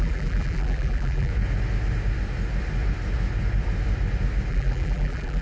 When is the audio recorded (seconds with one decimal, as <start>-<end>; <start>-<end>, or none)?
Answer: 1.3-4.5